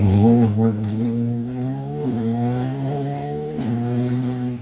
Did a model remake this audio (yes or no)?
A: yes